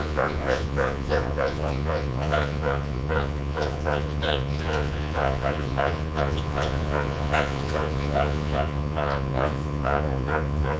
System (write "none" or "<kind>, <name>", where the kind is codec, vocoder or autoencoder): vocoder, Vocos